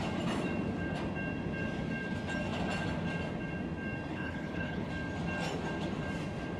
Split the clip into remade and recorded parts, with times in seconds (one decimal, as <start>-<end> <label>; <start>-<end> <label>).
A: 0.0-4.1 recorded; 4.1-4.9 remade; 4.9-6.6 recorded